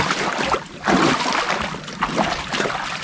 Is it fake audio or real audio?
real